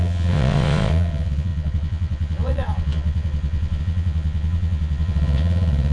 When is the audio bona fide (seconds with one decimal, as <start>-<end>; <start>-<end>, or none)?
none